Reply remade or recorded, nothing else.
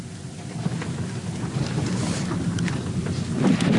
recorded